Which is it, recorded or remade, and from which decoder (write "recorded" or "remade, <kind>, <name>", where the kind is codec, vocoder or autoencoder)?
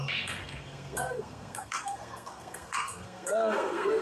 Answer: remade, codec, SNAC